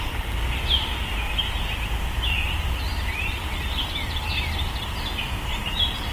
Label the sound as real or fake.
real